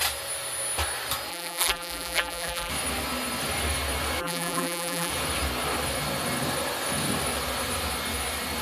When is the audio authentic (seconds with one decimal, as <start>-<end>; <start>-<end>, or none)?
0.0-1.3; 2.7-4.2; 5.1-8.6